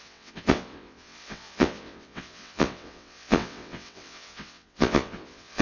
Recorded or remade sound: remade